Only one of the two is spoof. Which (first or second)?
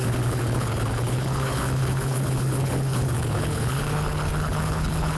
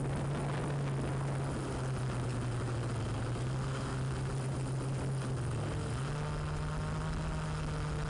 first